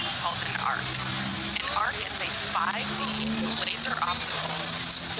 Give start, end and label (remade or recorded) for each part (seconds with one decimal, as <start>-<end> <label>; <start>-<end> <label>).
0.0-5.2 recorded